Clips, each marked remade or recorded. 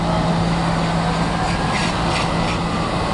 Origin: recorded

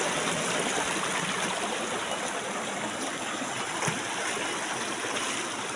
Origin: recorded